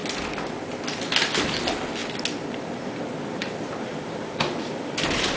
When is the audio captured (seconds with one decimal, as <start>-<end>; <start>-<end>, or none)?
0.0-3.4